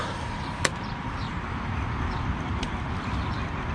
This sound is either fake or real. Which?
real